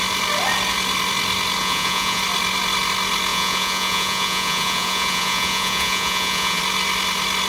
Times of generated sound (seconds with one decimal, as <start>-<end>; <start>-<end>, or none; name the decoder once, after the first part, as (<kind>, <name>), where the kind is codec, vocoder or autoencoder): 1.6-2.2 (vocoder, Vocos); 3.3-6.6

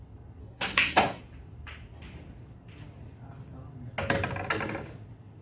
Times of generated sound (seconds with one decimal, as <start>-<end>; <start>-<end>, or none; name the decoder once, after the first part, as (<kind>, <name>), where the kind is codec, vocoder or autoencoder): 0.4-1.2 (codec, SNAC)